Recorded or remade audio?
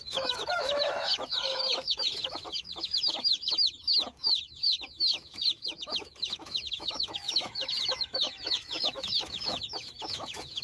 remade